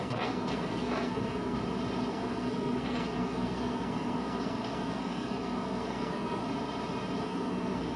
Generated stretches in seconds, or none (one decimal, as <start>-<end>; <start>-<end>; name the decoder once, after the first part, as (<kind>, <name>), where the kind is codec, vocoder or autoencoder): 0.0-1.6 (codec, SNAC); 2.1-6.4; 7.2-8.0